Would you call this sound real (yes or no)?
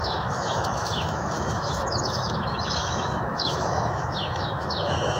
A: no